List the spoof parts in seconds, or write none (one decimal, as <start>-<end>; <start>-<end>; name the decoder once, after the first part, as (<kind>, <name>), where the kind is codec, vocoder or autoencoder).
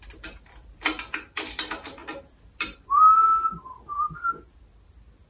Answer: none